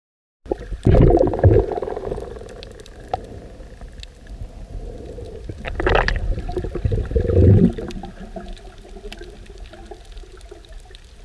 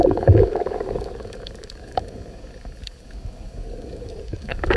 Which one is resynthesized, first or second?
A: second